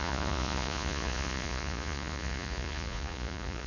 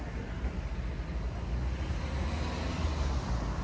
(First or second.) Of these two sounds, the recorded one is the second